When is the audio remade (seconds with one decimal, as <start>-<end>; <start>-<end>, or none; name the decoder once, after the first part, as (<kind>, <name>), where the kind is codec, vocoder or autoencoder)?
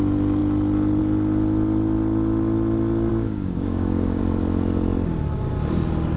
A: 3.1-4.2 (codec, DAC)